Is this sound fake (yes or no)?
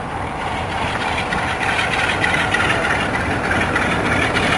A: yes